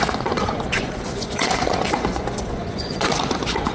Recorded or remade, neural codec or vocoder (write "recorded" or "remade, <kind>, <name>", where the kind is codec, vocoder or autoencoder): remade, vocoder, Vocos